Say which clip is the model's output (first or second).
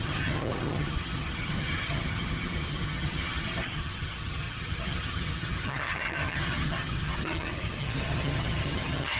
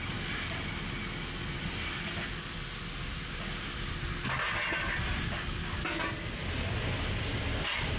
first